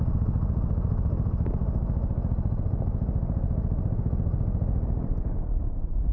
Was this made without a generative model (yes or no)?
yes